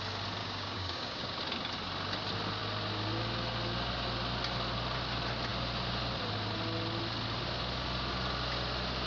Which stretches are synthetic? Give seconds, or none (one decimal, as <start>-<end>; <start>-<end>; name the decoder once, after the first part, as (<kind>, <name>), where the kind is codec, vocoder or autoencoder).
0.4-1.4 (codec, DAC)